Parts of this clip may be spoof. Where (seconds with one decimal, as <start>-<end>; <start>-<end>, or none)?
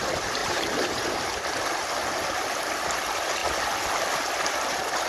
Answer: 0.4-1.4